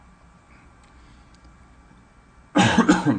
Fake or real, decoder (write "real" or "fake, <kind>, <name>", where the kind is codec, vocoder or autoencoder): real